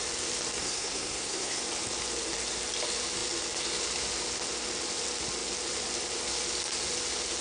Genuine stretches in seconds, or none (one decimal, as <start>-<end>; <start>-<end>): 0.0-0.6; 1.6-7.4